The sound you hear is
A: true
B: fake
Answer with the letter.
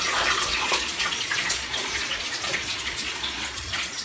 B